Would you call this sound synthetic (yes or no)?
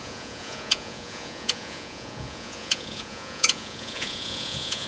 yes